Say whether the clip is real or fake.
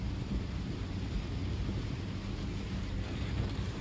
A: fake